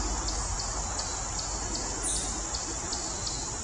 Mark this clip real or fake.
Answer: real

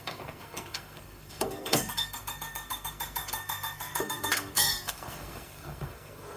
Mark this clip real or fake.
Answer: fake